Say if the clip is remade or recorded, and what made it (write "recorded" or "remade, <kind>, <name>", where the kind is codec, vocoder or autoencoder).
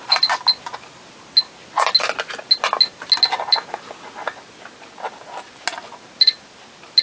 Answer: recorded